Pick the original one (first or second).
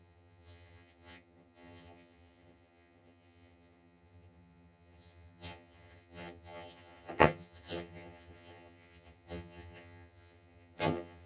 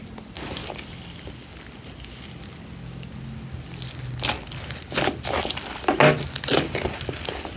second